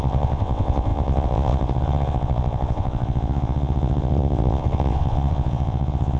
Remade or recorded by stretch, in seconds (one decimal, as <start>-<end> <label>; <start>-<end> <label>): 0.0-6.2 remade